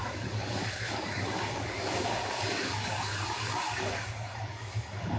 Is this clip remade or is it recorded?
remade